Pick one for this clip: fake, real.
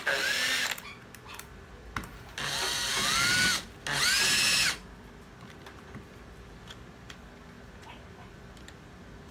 real